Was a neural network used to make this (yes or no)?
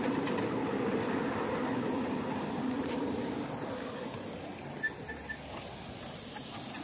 no